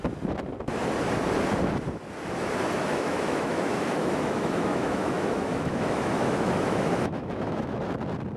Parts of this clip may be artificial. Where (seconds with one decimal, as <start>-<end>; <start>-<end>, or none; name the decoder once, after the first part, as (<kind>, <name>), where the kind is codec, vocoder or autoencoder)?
2.9-7.8 (autoencoder, DAC-VAE)